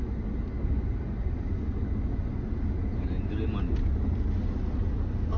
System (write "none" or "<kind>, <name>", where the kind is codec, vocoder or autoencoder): none